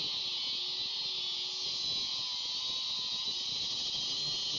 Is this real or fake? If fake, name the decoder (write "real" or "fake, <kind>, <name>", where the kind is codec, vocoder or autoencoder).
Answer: real